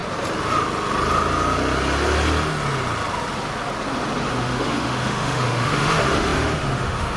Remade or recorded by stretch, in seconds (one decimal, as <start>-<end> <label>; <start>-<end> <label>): 0.0-4.3 recorded; 4.3-7.2 remade